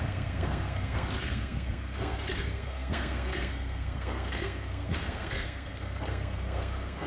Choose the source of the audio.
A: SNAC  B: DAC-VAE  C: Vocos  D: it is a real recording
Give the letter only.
A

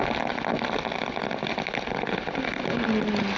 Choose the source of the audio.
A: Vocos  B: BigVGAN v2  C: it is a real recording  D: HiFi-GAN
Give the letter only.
C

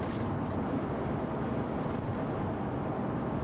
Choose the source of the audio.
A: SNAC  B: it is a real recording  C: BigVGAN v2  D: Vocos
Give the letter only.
B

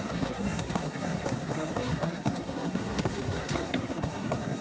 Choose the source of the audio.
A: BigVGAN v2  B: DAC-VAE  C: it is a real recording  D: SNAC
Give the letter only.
D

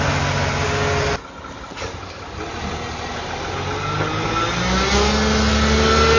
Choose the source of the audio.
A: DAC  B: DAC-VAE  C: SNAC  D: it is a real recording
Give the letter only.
D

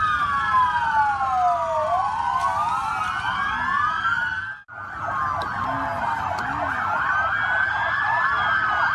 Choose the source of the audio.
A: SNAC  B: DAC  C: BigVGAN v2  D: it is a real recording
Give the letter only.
D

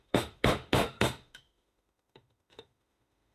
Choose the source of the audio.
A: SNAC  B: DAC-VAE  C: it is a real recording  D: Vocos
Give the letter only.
B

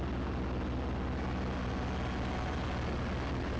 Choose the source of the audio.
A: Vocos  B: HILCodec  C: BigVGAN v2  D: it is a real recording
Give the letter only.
D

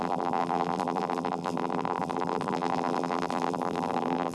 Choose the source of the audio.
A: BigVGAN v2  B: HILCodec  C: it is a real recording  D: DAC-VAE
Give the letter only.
A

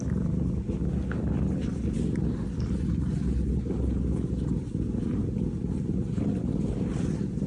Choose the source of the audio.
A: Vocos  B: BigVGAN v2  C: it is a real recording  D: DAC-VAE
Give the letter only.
C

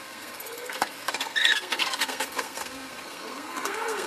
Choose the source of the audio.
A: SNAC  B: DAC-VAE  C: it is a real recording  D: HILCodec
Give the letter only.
A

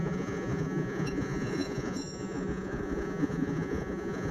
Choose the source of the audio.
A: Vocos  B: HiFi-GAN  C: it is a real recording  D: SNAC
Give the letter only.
A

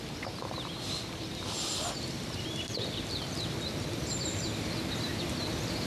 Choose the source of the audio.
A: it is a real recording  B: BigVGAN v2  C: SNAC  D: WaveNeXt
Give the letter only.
B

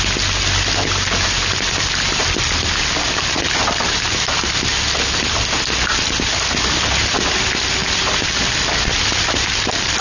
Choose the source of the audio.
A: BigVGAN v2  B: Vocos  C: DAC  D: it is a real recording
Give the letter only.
D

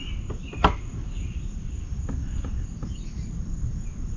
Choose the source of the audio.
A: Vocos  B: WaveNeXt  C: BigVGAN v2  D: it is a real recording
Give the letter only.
D